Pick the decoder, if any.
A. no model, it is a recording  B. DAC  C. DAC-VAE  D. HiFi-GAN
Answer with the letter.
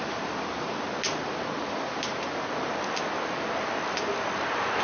A